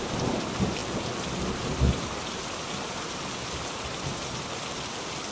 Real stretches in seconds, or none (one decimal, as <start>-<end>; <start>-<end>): none